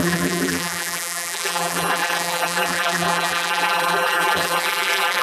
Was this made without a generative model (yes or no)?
no